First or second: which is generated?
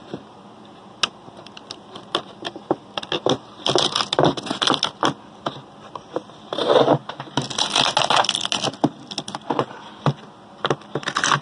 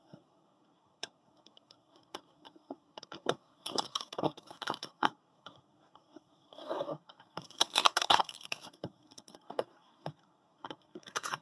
second